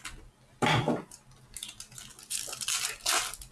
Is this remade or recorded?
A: recorded